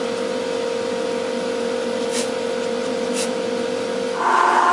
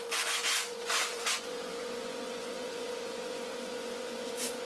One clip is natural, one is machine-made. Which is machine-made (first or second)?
second